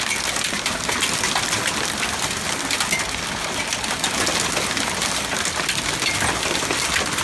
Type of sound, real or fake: real